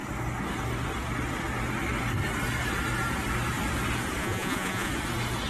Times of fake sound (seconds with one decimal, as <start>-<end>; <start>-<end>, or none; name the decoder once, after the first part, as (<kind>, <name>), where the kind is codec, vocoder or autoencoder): 4.2-4.9 (vocoder, Vocos)